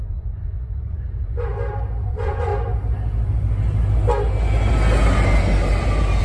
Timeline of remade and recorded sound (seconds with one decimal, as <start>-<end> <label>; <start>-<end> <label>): 0.0-1.5 remade; 1.5-2.1 recorded; 2.1-2.5 remade; 2.5-6.2 recorded